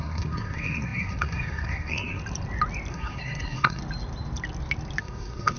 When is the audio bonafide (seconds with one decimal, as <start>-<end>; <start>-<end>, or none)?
2.2-2.9; 3.8-5.0